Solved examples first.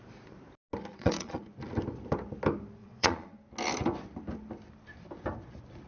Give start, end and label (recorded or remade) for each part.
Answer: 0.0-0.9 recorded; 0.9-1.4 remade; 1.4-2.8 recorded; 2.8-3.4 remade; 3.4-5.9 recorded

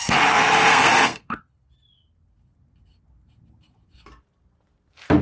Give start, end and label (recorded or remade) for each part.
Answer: 0.0-1.4 remade; 1.4-5.2 recorded